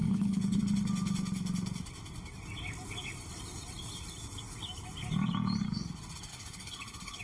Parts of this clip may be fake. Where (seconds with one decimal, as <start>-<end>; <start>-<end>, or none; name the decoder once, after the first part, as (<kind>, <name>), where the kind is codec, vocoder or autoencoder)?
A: 0.0-0.6 (codec, HILCodec); 6.3-7.2